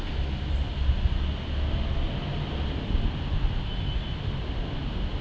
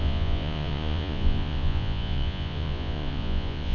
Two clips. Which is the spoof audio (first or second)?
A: second